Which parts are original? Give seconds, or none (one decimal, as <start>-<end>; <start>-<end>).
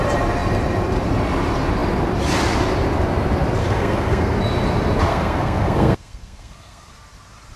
0.0-3.6; 4.3-5.1; 6.9-7.6